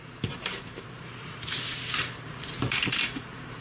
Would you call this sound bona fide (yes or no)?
no